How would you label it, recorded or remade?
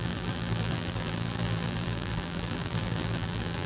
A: remade